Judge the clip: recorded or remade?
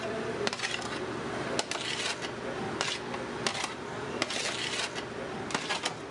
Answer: recorded